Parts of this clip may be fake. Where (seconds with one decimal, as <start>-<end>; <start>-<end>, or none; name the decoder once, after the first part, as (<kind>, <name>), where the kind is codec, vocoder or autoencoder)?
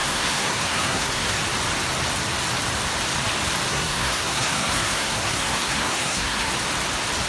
0.0-1.4 (codec, SNAC); 3.7-6.5